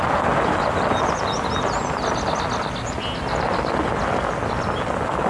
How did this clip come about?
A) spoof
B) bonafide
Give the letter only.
B